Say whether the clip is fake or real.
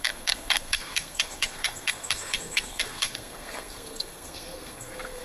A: fake